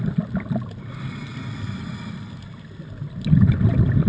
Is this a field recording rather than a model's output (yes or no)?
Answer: yes